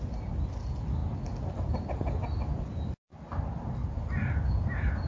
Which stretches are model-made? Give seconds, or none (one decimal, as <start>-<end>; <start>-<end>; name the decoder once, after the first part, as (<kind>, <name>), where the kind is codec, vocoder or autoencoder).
none